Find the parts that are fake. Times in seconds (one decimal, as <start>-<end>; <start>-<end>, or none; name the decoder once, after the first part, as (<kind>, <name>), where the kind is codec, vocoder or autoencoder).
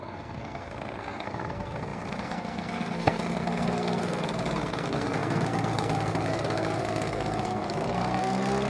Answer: 0.0-8.7 (codec, SNAC)